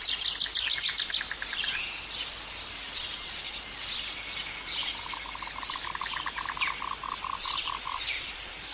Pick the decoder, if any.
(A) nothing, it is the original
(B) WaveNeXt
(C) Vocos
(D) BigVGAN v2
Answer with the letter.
D